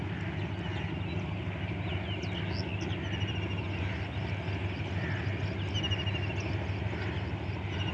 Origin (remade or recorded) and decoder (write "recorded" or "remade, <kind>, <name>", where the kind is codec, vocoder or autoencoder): recorded